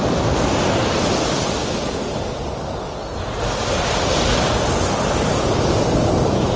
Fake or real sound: real